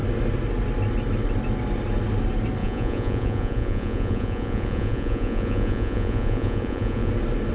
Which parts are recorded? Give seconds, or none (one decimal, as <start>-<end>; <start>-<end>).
0.0-2.6; 7.1-7.5